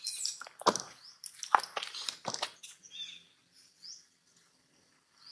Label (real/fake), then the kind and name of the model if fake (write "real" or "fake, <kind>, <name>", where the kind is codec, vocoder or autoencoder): real